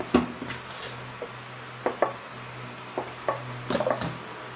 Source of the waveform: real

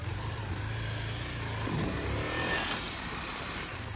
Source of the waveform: real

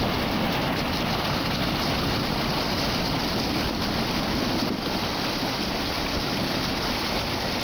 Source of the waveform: real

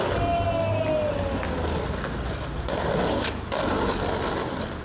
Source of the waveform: real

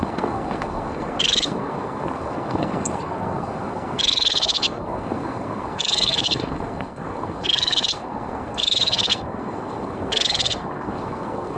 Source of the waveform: fake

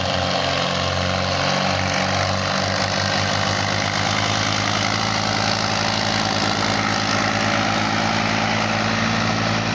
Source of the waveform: real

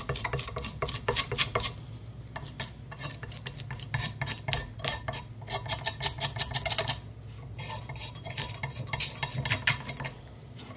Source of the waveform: real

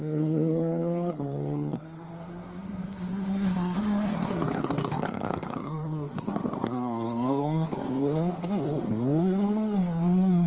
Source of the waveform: fake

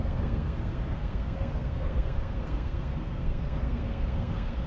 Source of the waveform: fake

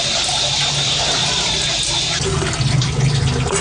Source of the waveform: real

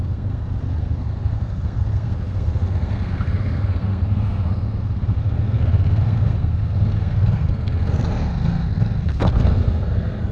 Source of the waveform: fake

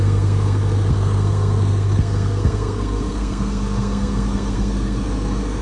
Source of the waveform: fake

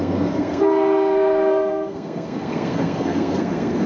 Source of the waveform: fake